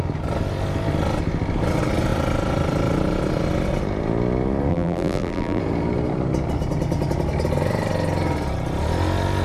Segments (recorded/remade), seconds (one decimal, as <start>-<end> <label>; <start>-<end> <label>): 0.0-4.7 recorded; 4.7-5.6 remade; 5.6-9.4 recorded